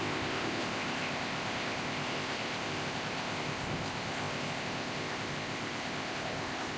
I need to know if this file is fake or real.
fake